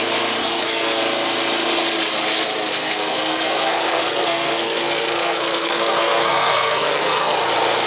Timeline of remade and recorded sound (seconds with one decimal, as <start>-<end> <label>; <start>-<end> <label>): 0.0-0.4 recorded; 0.4-1.0 remade; 1.0-2.7 recorded; 2.7-7.4 remade; 7.4-7.9 recorded